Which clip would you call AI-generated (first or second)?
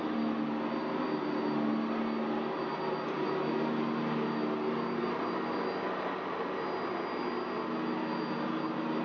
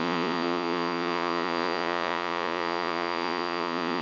second